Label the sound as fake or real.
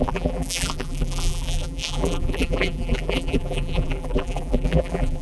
fake